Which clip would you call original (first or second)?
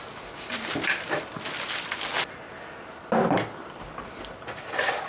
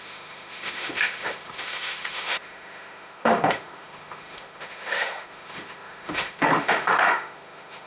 first